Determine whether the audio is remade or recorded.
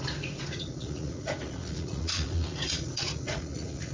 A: remade